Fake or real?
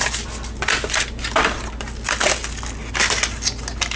real